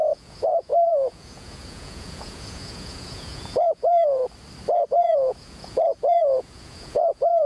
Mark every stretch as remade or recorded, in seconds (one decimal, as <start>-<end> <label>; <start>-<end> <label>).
0.0-4.2 remade; 4.2-4.9 recorded; 4.9-7.5 remade